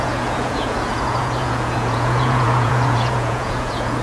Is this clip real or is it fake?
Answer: fake